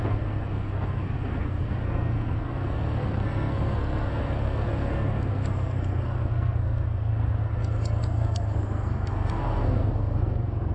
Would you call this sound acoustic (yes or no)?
no